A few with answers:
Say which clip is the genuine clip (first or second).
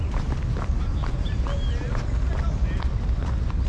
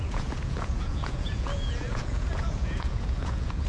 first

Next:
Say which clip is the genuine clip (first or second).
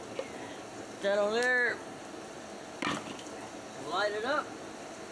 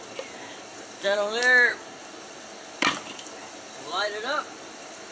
first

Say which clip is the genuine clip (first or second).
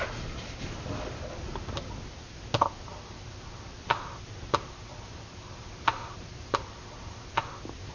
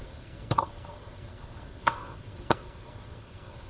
first